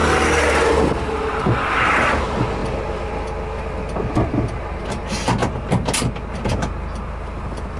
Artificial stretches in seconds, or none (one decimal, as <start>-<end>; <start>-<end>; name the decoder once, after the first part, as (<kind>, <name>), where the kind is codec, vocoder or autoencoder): none